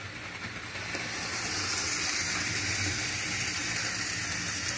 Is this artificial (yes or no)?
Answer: no